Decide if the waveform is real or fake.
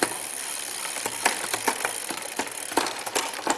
real